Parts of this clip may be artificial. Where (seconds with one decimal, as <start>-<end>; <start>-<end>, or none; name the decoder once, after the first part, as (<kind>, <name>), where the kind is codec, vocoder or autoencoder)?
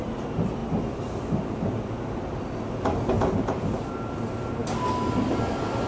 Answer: none